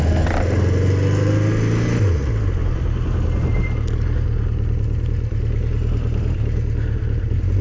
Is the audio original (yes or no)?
yes